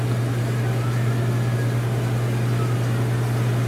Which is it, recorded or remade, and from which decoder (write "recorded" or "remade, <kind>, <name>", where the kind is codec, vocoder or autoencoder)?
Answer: recorded